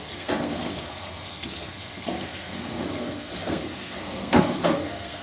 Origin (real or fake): fake